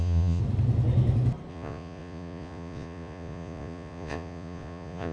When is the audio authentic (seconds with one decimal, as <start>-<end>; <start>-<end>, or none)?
0.4-1.5